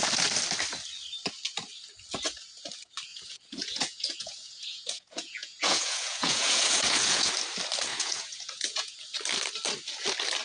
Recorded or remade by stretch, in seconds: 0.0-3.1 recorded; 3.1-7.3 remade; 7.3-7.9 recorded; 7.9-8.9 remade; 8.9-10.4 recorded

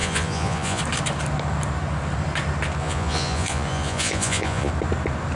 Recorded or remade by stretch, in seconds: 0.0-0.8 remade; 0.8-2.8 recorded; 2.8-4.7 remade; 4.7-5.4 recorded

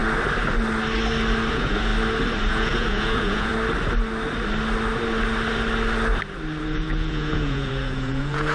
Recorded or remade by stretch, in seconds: 0.0-1.5 recorded; 1.5-1.9 remade; 1.9-2.5 recorded; 2.5-3.5 remade; 3.5-6.6 recorded; 6.6-8.5 remade

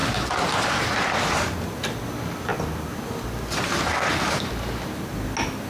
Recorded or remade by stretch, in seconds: 0.0-1.6 remade; 1.6-2.5 recorded; 2.5-3.1 remade; 3.1-5.7 recorded

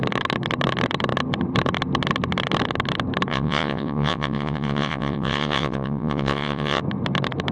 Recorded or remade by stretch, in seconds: 0.0-3.3 recorded; 3.3-6.8 remade; 6.8-7.5 recorded

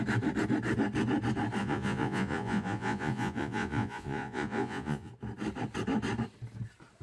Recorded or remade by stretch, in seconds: 0.0-1.6 recorded; 1.6-5.1 remade; 5.1-7.0 recorded

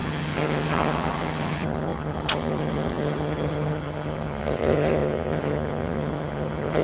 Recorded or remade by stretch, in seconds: 0.0-6.8 remade

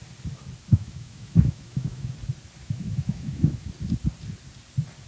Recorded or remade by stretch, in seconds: 0.0-0.7 recorded; 0.7-2.1 remade; 2.1-2.6 recorded; 2.6-3.7 remade; 3.7-5.1 recorded